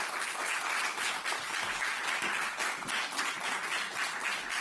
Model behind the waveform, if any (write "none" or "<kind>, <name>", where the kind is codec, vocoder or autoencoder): none